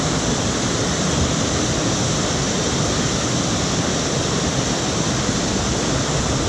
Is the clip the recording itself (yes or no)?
yes